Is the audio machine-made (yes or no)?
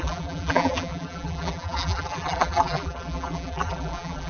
yes